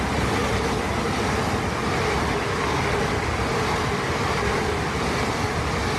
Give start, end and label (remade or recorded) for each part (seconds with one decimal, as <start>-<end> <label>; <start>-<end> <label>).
0.0-6.0 recorded